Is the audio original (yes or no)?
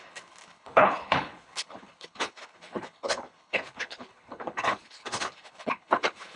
no